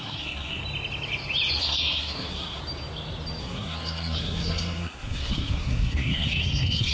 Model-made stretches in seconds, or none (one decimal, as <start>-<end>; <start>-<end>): 0.0-0.6; 1.6-2.6; 3.4-6.9